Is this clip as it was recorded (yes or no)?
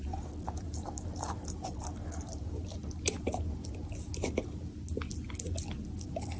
yes